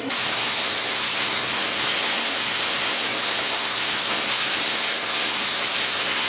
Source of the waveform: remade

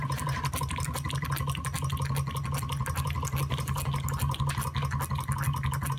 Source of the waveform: recorded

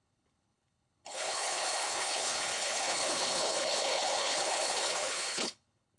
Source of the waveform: remade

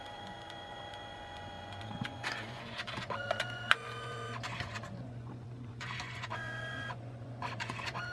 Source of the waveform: remade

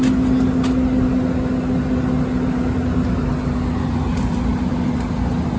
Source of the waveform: recorded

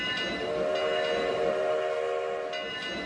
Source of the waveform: recorded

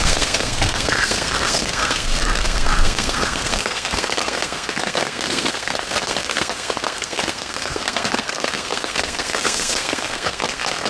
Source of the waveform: remade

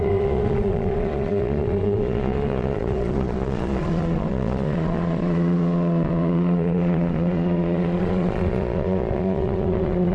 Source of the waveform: remade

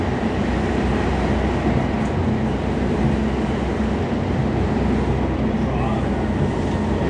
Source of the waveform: recorded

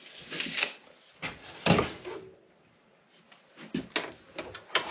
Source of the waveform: recorded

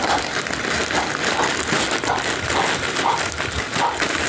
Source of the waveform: recorded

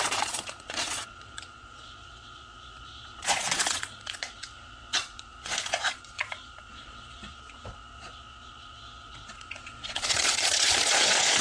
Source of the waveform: remade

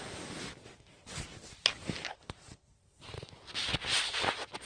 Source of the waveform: recorded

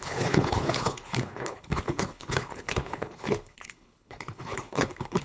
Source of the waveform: remade